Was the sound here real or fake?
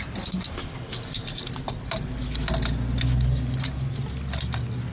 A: real